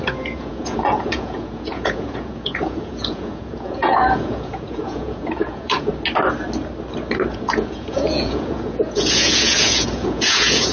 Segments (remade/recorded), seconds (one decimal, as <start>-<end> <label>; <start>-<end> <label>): 0.0-5.9 remade; 5.9-7.3 recorded; 7.3-10.7 remade